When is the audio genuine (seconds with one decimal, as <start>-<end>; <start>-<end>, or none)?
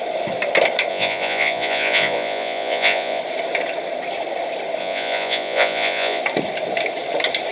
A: 0.0-0.9; 3.2-4.8; 6.2-7.5